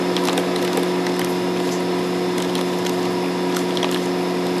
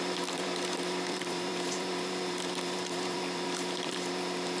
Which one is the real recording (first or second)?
first